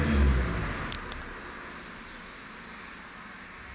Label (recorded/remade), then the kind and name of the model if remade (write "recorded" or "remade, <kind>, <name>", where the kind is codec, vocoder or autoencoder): recorded